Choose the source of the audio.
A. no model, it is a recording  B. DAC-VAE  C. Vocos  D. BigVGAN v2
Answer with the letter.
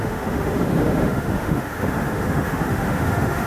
B